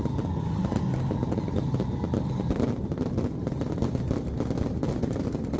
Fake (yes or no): no